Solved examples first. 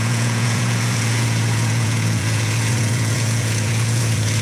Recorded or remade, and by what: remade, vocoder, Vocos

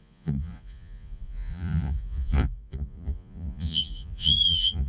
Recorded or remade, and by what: remade, vocoder, Vocos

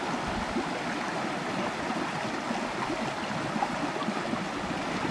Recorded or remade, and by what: recorded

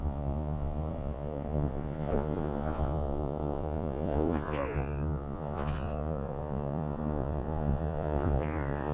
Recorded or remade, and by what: remade, vocoder, Vocos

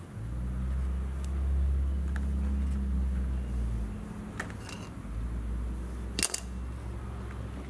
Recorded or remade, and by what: recorded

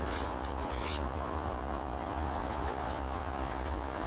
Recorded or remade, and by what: remade, vocoder, Vocos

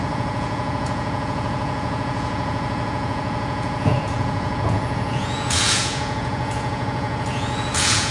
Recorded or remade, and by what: remade, vocoder, Vocos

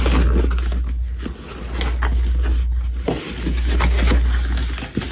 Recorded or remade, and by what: recorded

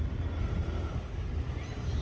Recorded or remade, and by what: recorded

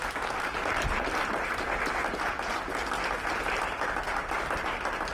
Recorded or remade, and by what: recorded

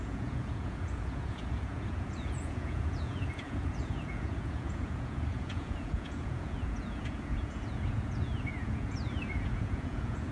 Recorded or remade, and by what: remade, vocoder, Vocos